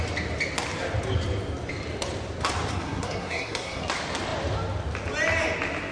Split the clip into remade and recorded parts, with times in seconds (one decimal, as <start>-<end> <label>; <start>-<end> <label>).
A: 0.0-2.7 recorded; 2.7-3.8 remade; 3.8-5.9 recorded